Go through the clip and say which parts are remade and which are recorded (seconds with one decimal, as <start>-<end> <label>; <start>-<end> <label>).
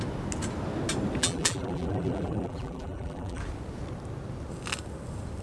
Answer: 0.0-1.2 recorded; 1.2-3.4 remade; 3.4-5.4 recorded